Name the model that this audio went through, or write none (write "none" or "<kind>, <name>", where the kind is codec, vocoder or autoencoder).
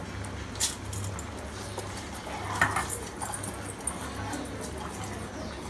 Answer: none